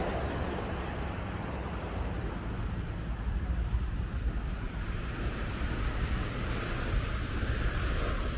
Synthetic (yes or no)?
no